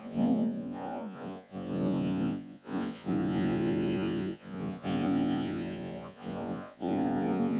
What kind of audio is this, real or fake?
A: fake